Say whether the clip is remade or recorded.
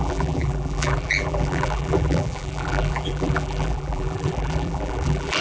remade